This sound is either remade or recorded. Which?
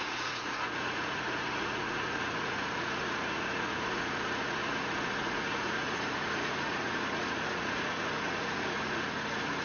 remade